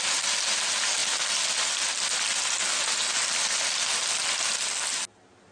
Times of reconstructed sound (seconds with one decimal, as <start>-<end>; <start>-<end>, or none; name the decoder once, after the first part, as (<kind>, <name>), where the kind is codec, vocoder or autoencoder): none